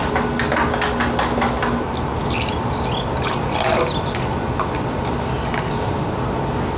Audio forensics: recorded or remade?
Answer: recorded